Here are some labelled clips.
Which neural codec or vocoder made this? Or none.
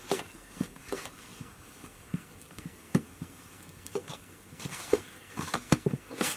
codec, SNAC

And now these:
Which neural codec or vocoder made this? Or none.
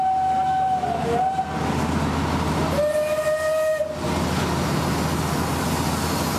none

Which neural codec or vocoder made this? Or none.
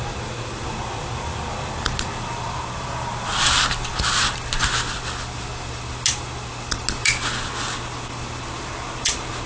none